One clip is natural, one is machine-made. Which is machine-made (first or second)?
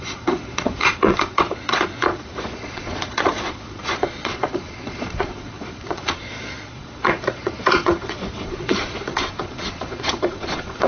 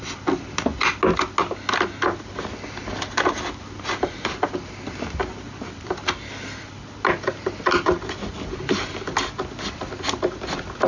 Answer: first